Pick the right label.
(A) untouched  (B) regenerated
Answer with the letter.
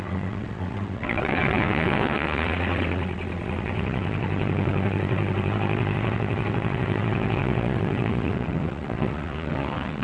B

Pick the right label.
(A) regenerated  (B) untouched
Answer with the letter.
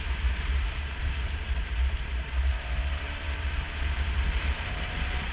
A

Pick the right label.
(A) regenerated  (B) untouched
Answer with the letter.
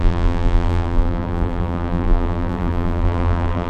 A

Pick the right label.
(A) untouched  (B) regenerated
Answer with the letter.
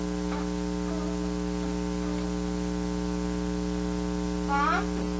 A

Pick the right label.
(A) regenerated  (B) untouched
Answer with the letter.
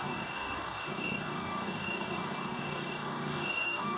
A